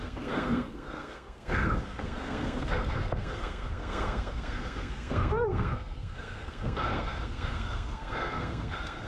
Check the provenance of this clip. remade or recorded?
remade